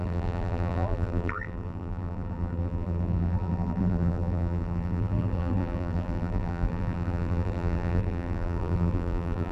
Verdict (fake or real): fake